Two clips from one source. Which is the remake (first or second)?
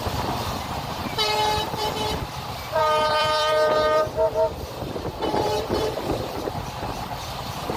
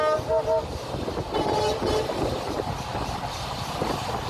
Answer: first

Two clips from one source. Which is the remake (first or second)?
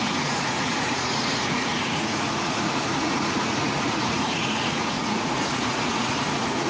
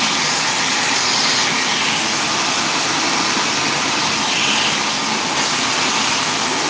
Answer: first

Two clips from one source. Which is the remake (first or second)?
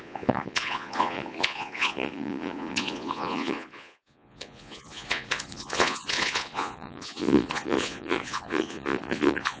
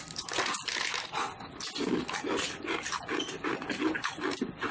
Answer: first